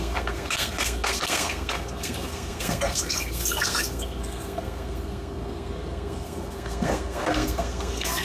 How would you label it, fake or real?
fake